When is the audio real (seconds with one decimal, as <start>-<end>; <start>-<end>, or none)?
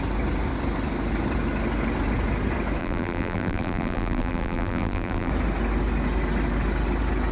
0.0-2.8; 5.3-7.3